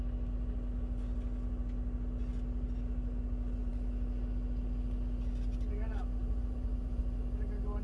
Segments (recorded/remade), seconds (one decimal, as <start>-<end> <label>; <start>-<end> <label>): 0.0-6.2 recorded; 6.2-7.0 remade; 7.0-7.8 recorded